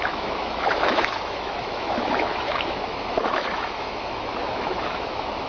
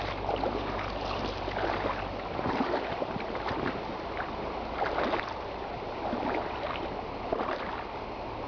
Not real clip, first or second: first